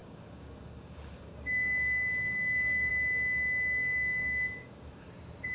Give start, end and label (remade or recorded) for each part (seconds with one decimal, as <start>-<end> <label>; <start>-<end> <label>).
0.0-2.9 remade; 2.9-3.8 recorded; 3.8-5.1 remade; 5.1-5.5 recorded